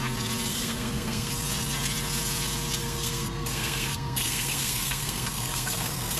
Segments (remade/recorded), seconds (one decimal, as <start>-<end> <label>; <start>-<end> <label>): 0.0-0.5 recorded; 0.5-1.3 remade; 1.3-2.8 recorded; 2.8-6.2 remade